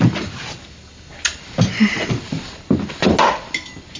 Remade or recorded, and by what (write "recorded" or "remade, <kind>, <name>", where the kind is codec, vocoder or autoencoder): recorded